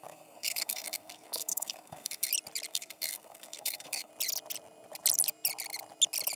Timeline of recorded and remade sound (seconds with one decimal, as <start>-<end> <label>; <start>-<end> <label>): 0.0-2.3 remade; 2.3-2.7 recorded; 2.7-4.1 remade; 4.1-6.4 recorded